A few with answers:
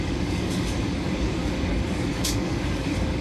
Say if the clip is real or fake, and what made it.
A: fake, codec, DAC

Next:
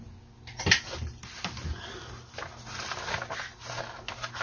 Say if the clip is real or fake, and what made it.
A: real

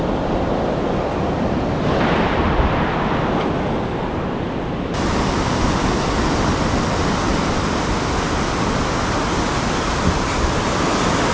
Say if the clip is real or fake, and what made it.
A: real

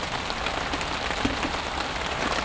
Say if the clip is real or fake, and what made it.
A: real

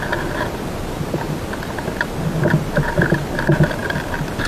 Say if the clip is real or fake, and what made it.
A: real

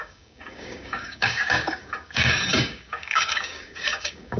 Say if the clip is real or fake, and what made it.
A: fake, codec, DAC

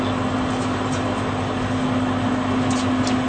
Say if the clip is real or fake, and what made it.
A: real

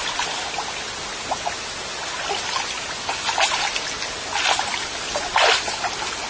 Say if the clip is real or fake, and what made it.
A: real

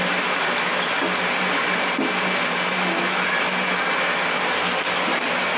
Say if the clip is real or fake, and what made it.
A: real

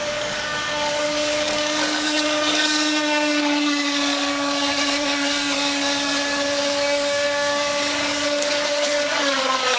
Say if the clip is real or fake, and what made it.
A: fake, codec, DAC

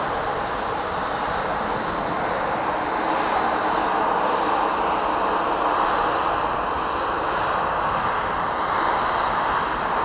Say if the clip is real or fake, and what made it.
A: real